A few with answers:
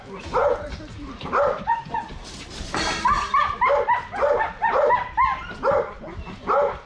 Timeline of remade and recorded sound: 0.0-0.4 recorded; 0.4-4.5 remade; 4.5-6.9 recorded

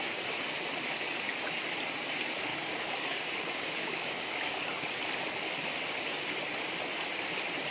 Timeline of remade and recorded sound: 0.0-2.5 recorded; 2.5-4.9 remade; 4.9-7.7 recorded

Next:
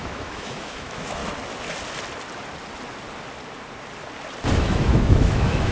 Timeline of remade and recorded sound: 0.0-1.2 remade; 1.2-4.6 recorded; 4.6-5.7 remade